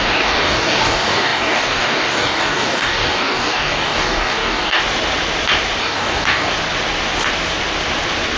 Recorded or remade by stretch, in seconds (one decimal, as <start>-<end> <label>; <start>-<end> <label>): 0.0-4.8 remade; 4.8-5.8 recorded; 5.8-6.5 remade; 6.5-8.4 recorded